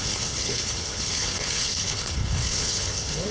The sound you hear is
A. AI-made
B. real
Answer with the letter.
A